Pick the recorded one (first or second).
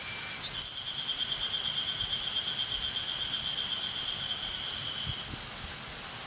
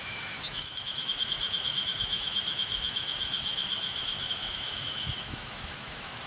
first